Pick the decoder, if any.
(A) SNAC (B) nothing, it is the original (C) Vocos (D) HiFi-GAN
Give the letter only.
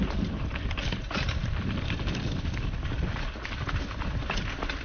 B